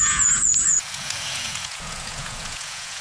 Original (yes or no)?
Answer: no